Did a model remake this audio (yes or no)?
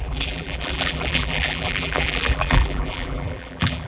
yes